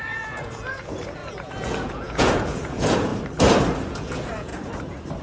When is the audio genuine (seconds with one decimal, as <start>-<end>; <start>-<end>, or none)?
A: 3.1-3.8; 4.5-5.2